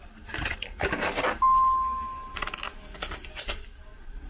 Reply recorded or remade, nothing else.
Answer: recorded